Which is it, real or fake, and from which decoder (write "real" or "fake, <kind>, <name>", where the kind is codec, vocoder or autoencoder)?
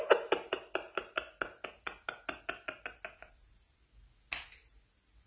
real